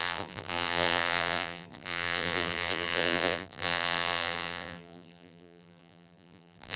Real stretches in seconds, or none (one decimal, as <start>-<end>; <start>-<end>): none